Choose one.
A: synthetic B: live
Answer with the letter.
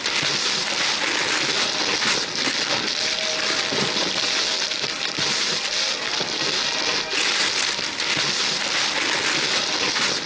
B